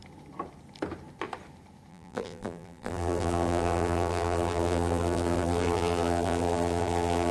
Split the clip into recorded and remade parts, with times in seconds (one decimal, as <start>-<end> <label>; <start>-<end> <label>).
0.0-1.9 recorded; 1.9-7.3 remade